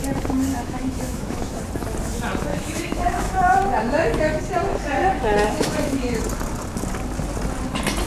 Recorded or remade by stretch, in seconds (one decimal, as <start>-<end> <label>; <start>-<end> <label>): 0.0-0.5 recorded; 0.5-1.6 remade; 1.6-2.5 recorded; 2.5-4.4 remade; 4.4-5.0 recorded; 5.0-6.2 remade; 6.2-8.1 recorded